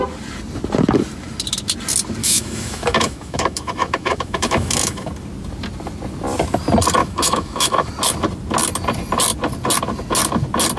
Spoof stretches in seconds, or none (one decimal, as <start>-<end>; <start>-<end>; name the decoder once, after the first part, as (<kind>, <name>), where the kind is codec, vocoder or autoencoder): 2.2-5.1 (autoencoder, DAC-VAE); 7.0-7.9

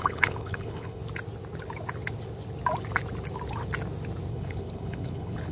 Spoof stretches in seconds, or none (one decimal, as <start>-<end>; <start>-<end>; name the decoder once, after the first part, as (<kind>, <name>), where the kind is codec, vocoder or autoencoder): 0.0-1.0 (codec, HILCodec); 4.3-5.5